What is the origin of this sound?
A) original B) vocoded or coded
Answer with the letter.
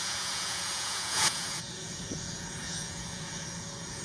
B